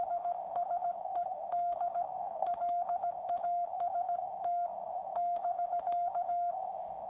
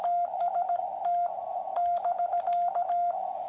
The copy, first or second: first